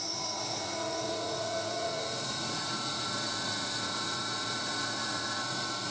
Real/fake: fake